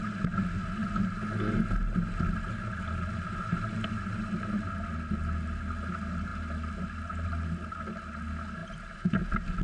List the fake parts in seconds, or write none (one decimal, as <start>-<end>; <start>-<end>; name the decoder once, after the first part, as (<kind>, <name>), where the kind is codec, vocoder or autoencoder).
8.6-9.2 (vocoder, BigVGAN v2)